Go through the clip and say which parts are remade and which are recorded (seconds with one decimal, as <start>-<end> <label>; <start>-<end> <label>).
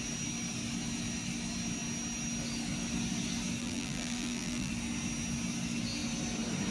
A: 0.0-3.6 recorded; 3.6-4.7 remade; 4.7-6.7 recorded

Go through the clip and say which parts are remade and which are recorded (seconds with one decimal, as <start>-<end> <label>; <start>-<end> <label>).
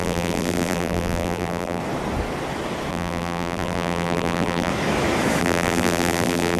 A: 0.0-1.8 remade; 1.8-2.9 recorded; 2.9-4.7 remade; 4.7-5.4 recorded; 5.4-6.6 remade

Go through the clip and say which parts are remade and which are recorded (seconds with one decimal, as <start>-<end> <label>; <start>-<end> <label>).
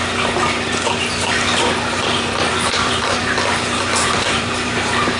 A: 0.0-2.5 recorded; 2.5-5.2 remade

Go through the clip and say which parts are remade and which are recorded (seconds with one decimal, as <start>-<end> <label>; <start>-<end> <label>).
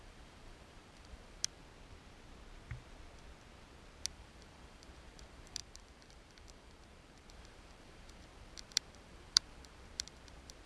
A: 0.0-1.6 remade; 1.6-4.1 recorded; 4.1-10.7 remade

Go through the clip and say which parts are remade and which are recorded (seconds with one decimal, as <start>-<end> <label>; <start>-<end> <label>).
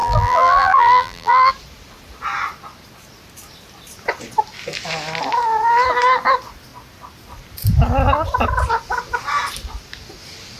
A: 0.0-1.5 remade; 1.5-10.6 recorded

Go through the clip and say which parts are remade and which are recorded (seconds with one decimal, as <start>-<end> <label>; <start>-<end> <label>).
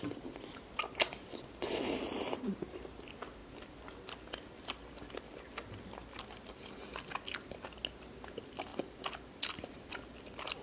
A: 0.0-10.6 recorded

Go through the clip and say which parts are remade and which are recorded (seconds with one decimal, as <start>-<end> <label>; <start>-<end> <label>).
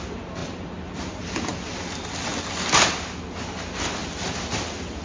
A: 0.0-0.4 recorded; 0.4-1.5 remade; 1.5-4.0 recorded; 4.0-5.0 remade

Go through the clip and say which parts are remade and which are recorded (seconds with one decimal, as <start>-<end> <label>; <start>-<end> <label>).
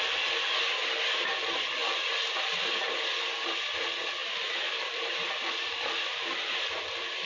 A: 0.0-4.2 recorded; 4.2-6.7 remade; 6.7-7.3 recorded